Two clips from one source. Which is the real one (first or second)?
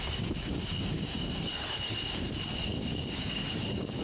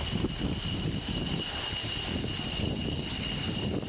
second